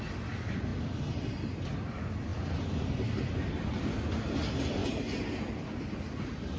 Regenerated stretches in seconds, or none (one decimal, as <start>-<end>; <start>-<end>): none